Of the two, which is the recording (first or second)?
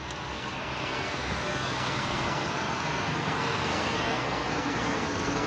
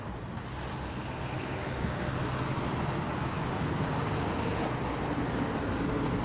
second